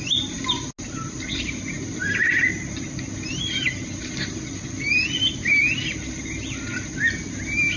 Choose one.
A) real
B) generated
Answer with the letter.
A